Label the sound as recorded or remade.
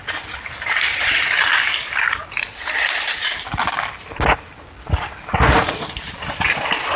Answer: recorded